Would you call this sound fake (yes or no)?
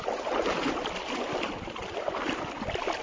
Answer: no